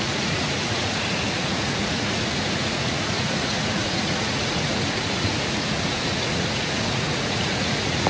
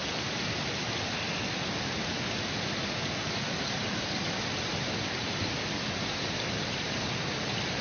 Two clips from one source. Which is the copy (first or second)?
first